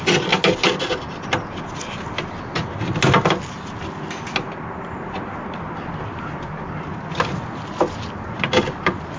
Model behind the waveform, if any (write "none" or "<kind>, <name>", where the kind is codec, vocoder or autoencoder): none